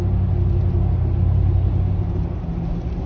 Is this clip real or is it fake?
real